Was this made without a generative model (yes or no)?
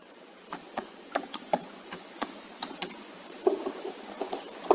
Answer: no